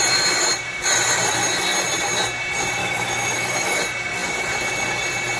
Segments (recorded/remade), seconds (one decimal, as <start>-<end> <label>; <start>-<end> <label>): 0.0-2.8 recorded; 2.8-3.8 remade; 3.8-5.4 recorded